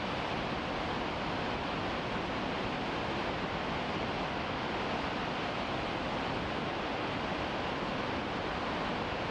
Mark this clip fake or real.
real